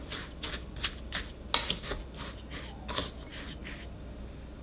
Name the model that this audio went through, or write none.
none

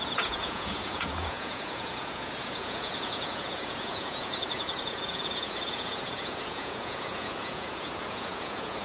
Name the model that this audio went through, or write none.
vocoder, Vocos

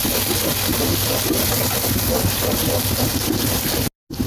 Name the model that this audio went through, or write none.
none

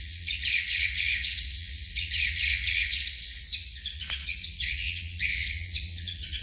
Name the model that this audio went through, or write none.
vocoder, Vocos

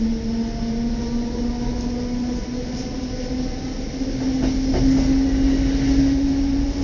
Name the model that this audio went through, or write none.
none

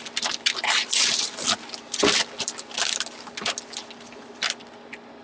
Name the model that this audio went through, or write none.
none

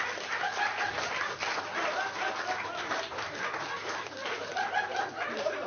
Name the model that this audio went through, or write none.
none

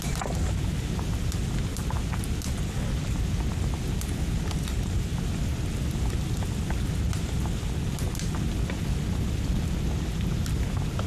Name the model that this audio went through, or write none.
none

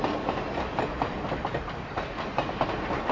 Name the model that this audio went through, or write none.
none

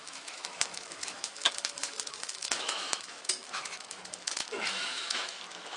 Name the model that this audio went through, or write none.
autoencoder, DAC-VAE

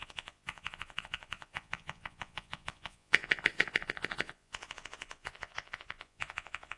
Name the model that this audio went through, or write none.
vocoder, Vocos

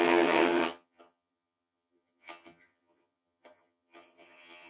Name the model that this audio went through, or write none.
vocoder, HiFi-GAN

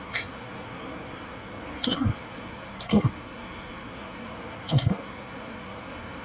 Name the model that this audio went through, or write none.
codec, SNAC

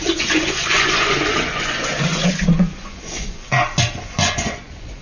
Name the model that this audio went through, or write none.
vocoder, Vocos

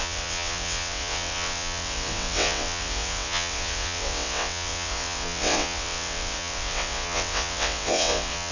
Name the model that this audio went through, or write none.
vocoder, WaveNeXt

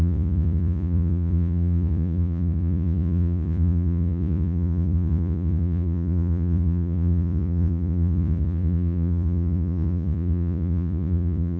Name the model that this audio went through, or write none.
vocoder, Vocos